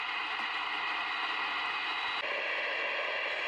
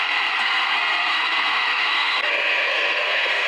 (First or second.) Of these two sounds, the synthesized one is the second